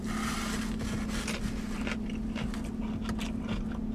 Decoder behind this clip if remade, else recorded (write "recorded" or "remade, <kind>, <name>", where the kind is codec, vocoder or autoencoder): recorded